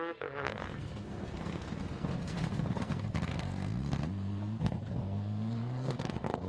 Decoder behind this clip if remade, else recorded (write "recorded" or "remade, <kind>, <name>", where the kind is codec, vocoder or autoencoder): remade, codec, SNAC